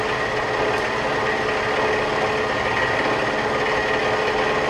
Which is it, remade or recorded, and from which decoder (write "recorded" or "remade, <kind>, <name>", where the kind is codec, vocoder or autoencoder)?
recorded